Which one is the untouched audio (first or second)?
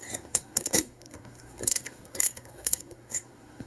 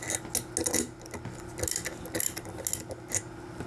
second